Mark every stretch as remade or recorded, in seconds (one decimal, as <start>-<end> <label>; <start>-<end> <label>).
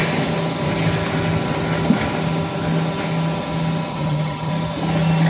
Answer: 0.0-3.9 recorded; 3.9-4.5 remade; 4.5-5.3 recorded